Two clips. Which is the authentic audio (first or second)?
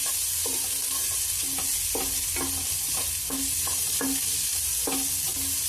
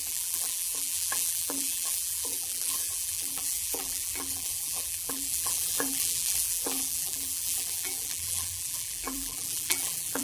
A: first